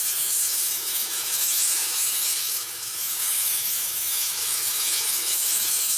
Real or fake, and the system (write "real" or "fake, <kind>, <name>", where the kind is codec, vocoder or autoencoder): fake, autoencoder, DAC-VAE